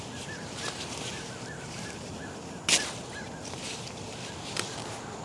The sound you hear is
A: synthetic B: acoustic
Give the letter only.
B